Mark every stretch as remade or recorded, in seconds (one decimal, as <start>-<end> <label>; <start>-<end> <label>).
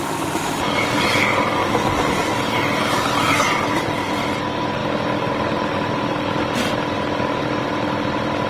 0.0-8.5 recorded